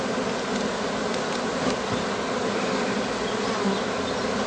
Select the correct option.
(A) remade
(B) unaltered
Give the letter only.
B